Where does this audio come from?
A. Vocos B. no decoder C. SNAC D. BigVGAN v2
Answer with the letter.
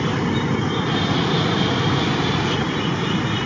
B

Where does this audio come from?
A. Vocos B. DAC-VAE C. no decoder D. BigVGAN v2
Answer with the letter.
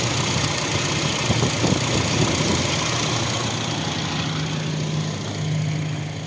C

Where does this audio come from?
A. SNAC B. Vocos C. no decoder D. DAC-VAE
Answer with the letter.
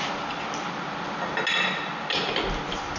C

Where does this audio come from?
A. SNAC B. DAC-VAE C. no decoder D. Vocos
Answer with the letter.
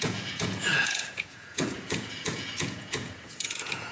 D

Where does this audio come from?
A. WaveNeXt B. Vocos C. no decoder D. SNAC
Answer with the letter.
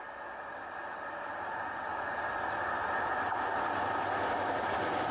C